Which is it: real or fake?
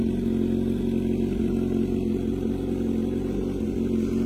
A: real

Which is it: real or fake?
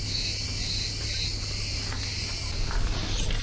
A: real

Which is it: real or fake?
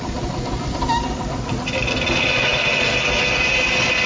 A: real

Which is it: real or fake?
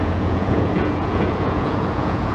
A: fake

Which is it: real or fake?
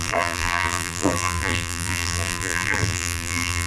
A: fake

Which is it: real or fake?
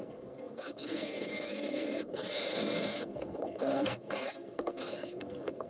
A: fake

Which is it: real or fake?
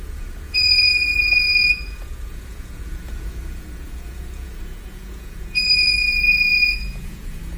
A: fake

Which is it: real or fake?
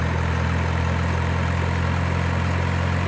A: real